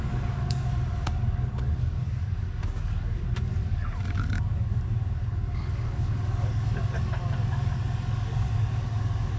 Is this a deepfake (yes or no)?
yes